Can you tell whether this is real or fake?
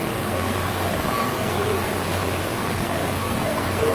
fake